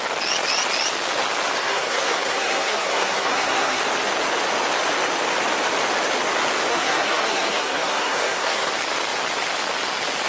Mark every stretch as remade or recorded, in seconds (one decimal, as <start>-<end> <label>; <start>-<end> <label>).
0.0-1.6 recorded; 1.6-3.8 remade; 3.8-6.7 recorded; 6.7-8.7 remade; 8.7-10.3 recorded